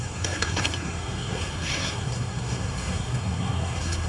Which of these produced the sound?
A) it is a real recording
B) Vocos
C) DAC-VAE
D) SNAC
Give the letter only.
D